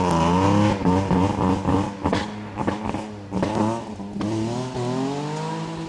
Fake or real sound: real